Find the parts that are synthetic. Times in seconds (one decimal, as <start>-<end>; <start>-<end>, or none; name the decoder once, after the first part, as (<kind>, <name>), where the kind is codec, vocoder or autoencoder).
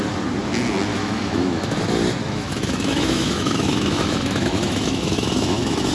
0.9-1.8 (autoencoder, DAC-VAE); 2.2-5.9